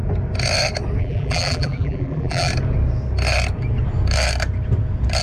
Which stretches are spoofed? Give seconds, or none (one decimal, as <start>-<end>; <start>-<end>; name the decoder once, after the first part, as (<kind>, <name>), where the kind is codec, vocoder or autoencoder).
1.0-2.5 (vocoder, BigVGAN v2)